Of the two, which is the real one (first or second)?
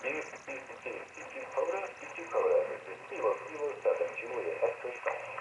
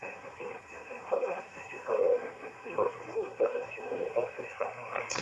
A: first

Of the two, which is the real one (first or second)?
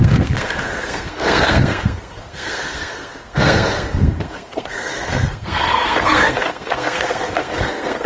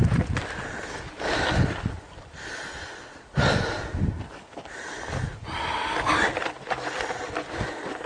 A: second